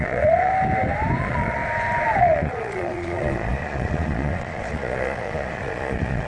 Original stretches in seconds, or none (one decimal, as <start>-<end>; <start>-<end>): 0.5-1.2; 1.6-2.2